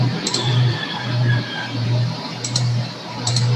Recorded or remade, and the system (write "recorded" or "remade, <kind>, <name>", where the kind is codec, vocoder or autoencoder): remade, vocoder, BigVGAN v2